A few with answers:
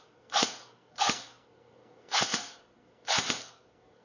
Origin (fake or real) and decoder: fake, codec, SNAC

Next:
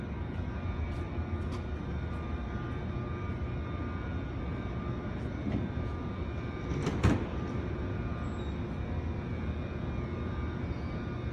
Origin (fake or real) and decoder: real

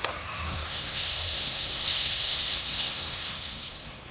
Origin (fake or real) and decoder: fake, codec, SNAC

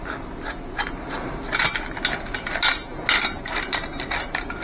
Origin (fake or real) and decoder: real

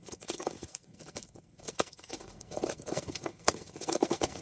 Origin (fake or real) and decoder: fake, codec, SNAC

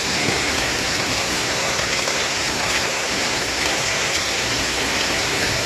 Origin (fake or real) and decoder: fake, codec, SNAC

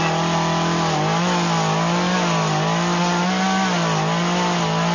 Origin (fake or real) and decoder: real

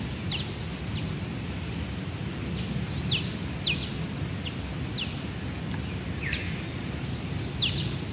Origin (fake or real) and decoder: real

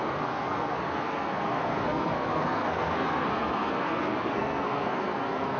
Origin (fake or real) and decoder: fake, codec, SNAC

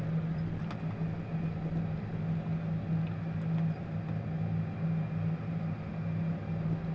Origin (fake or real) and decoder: real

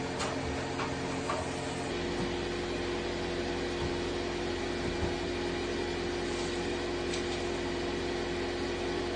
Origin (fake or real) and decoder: real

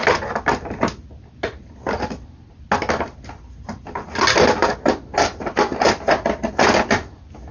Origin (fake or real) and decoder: real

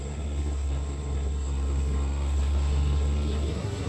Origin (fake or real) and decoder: fake, codec, SNAC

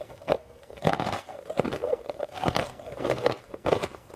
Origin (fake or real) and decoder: fake, codec, SNAC